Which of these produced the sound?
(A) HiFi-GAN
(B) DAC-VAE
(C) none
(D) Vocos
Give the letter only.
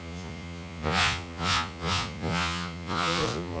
D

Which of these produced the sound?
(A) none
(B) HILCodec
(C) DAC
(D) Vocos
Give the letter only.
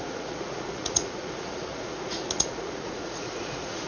D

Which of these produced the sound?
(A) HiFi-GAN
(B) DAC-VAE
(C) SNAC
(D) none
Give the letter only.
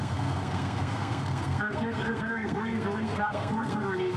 C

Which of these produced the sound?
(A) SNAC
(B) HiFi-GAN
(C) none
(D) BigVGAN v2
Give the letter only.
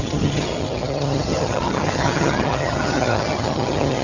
B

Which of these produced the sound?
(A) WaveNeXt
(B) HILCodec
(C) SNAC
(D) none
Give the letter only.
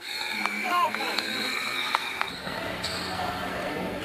C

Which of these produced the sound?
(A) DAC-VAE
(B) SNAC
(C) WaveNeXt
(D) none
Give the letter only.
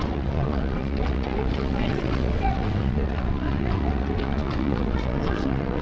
C